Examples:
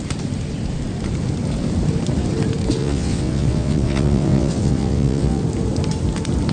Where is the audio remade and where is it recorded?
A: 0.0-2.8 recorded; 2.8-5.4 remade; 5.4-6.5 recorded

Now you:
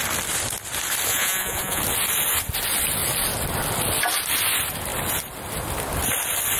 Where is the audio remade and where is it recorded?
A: 0.0-1.1 recorded; 1.1-1.8 remade; 1.8-6.6 recorded

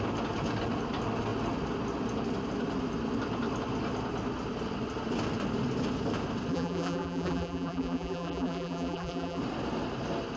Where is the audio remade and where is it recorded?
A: 0.0-6.5 recorded; 6.5-9.4 remade; 9.4-10.4 recorded

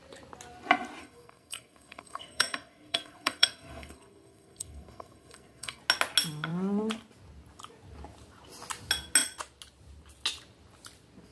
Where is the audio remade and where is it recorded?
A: 0.0-1.0 recorded; 1.0-5.8 remade; 5.8-11.3 recorded

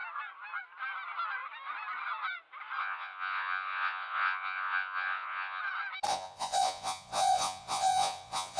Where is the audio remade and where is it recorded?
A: 0.0-2.8 recorded; 2.8-5.6 remade; 5.6-6.1 recorded; 6.1-8.6 remade

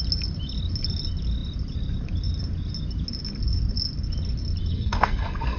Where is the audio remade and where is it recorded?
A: 0.0-4.7 recorded; 4.7-5.6 remade

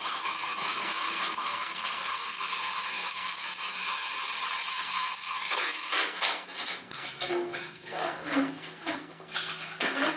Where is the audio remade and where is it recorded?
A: 0.0-4.1 remade; 4.1-4.7 recorded; 4.7-10.2 remade